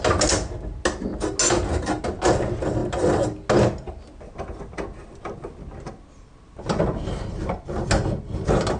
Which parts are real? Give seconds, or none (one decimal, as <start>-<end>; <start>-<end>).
0.0-8.8